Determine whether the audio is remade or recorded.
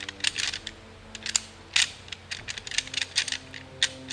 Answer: recorded